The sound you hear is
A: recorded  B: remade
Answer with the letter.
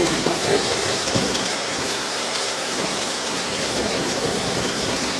B